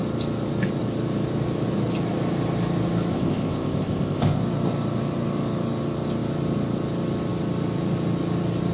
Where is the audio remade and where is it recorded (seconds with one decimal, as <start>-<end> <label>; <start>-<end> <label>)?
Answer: 0.0-3.1 recorded; 3.1-4.4 remade; 4.4-8.7 recorded